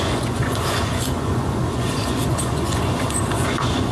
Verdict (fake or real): fake